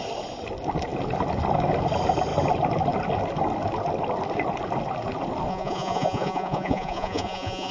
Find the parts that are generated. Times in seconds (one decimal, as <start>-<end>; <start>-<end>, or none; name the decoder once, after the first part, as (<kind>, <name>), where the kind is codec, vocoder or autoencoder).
5.5-7.7 (vocoder, Vocos)